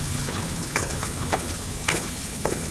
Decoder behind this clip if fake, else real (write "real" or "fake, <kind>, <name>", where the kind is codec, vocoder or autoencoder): fake, codec, HILCodec